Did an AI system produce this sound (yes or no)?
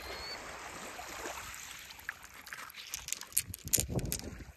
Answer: no